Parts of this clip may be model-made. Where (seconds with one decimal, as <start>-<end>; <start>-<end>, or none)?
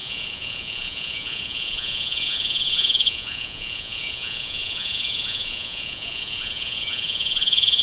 0.0-7.8